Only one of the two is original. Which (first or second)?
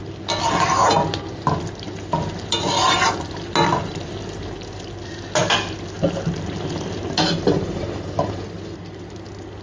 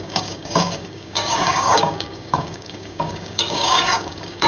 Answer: first